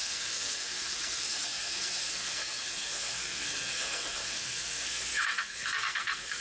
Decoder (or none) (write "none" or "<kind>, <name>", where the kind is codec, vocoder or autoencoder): codec, SNAC